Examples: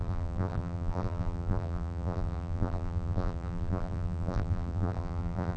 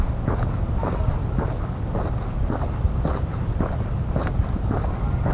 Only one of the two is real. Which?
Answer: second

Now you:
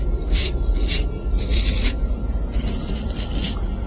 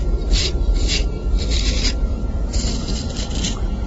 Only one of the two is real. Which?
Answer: first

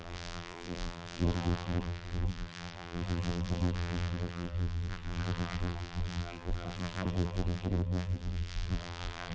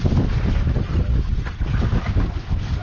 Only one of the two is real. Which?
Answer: second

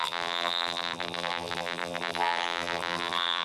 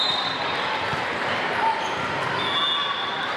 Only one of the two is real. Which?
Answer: second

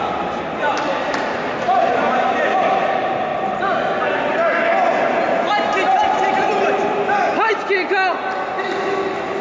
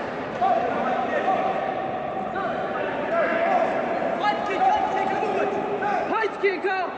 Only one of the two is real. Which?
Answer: first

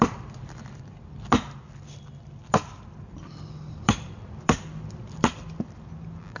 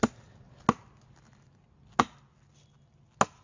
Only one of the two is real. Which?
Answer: second